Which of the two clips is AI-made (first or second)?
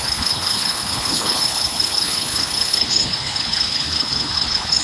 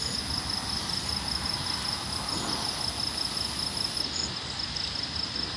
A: first